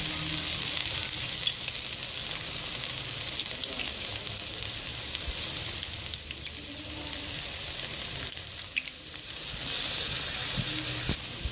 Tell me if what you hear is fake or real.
real